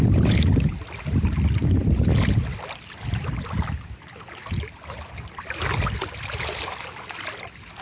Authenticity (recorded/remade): recorded